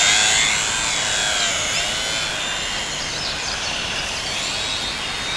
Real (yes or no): yes